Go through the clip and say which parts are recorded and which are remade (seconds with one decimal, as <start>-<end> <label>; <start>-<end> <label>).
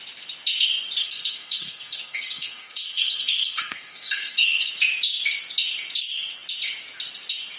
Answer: 0.0-1.0 recorded; 1.0-4.7 remade; 4.7-7.6 recorded